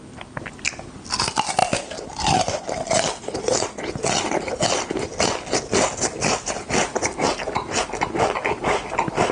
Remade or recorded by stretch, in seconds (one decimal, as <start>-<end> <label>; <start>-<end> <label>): 0.0-9.3 recorded